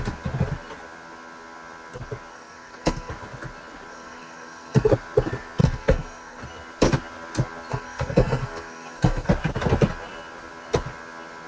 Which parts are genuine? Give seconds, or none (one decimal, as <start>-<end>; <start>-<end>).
0.0-2.3; 3.1-3.9; 4.9-5.6; 6.4-7.7; 9.3-11.5

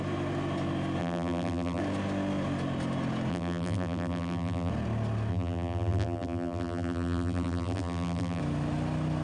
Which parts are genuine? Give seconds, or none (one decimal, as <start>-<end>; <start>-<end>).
0.0-1.0; 1.8-3.3; 4.7-5.3; 8.4-9.2

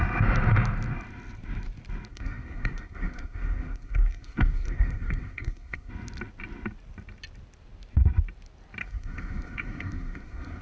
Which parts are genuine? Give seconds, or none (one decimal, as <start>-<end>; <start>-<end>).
0.0-2.1; 5.9-8.8

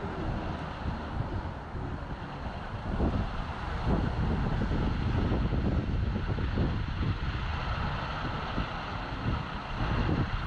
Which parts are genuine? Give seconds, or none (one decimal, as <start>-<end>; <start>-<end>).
0.0-10.5

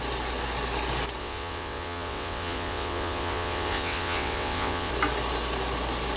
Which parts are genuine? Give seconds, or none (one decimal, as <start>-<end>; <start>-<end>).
0.0-1.2; 4.9-6.2

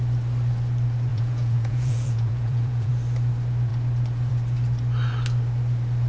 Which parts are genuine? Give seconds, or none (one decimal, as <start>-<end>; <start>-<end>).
0.0-1.1; 2.9-6.1